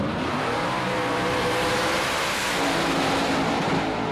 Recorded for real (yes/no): no